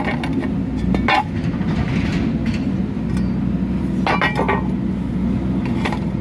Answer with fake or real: real